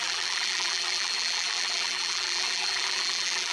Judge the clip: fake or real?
fake